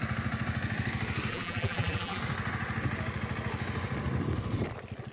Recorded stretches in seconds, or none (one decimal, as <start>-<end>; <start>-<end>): 0.0-1.3; 2.2-5.1